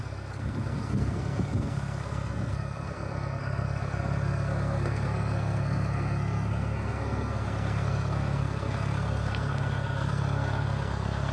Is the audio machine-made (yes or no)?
yes